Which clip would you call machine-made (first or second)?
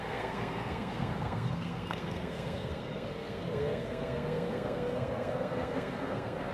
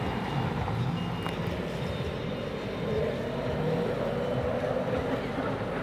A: first